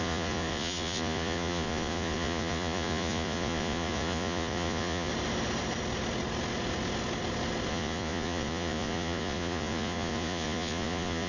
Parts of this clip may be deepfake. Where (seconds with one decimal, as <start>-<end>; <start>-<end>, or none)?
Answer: 0.0-5.1; 7.7-11.3